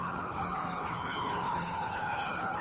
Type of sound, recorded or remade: remade